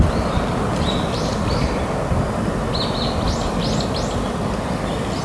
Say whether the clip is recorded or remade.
recorded